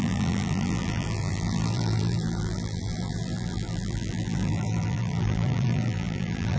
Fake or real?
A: fake